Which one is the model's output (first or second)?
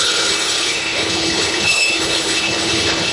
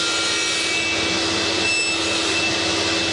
first